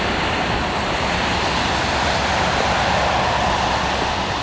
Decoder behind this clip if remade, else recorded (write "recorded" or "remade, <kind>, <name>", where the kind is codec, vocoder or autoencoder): recorded